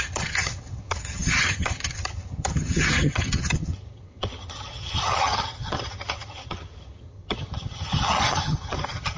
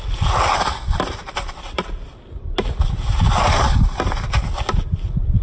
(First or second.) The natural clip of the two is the second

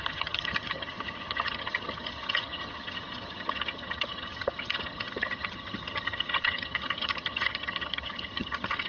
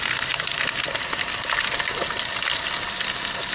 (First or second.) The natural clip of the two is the second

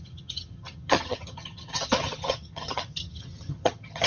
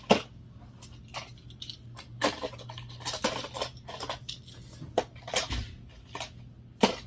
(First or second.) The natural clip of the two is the second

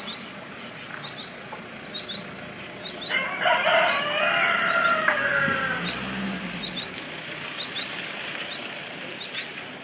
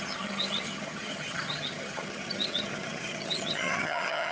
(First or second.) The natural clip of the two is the first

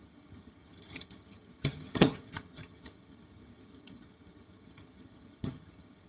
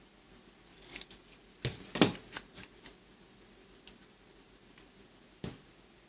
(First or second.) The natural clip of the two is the second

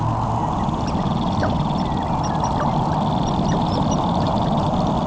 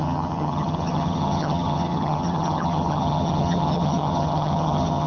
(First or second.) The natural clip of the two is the first